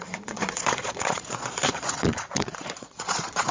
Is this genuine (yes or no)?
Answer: no